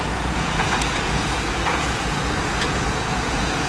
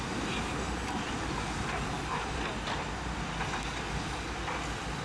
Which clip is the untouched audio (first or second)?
second